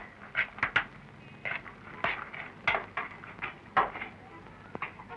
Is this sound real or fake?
real